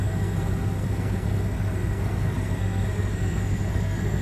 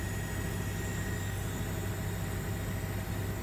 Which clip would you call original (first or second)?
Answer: second